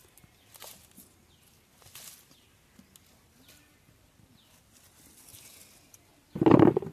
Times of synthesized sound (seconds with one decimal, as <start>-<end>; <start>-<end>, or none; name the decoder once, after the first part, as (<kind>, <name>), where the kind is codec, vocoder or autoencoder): none